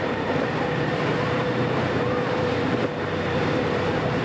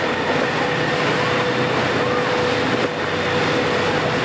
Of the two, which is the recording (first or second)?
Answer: second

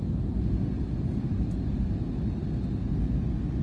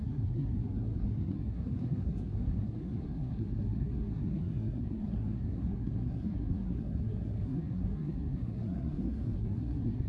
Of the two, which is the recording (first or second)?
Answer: first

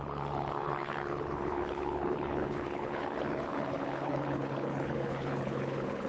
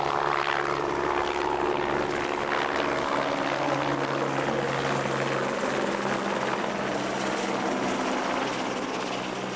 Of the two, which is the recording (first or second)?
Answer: second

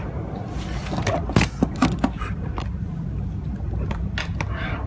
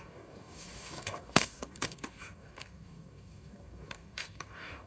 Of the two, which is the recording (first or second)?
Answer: first